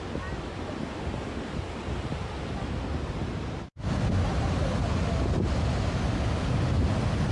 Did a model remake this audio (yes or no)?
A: no